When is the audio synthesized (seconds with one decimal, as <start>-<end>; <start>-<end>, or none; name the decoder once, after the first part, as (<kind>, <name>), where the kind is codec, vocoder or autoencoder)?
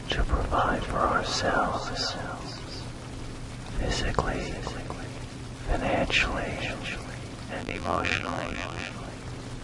7.6-8.9 (vocoder, BigVGAN v2)